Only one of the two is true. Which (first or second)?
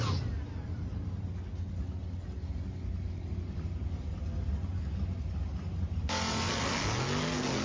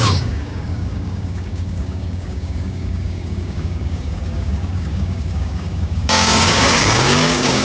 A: first